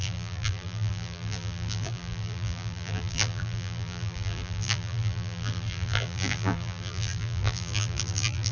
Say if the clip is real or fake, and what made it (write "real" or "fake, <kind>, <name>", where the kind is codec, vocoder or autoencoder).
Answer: fake, vocoder, BigVGAN v2